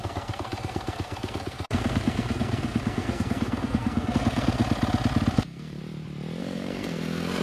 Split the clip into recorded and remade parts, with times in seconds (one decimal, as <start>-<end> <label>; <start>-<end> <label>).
0.0-4.6 remade; 4.6-5.3 recorded; 5.3-5.8 remade; 5.8-6.4 recorded; 6.4-7.4 remade